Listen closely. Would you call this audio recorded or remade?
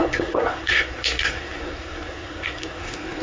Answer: remade